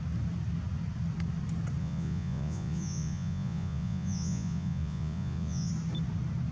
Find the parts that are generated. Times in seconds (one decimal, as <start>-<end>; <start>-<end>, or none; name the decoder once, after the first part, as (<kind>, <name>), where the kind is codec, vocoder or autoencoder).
1.8-5.7 (vocoder, Vocos)